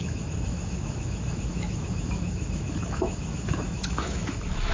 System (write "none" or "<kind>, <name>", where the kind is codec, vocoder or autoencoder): autoencoder, DAC-VAE